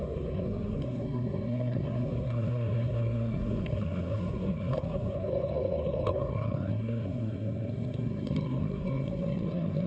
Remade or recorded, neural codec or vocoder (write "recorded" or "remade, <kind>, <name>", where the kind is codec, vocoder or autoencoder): remade, codec, SNAC